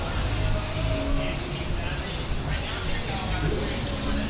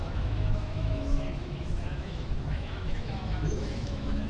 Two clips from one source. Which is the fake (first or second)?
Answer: second